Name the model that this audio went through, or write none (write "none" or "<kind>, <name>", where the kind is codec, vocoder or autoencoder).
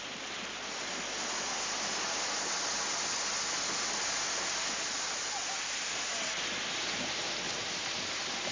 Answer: none